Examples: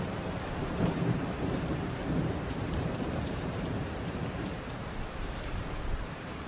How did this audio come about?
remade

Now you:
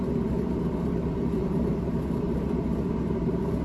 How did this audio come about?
remade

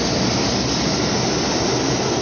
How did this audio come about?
recorded